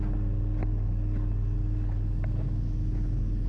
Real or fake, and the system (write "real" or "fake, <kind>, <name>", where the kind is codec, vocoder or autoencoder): real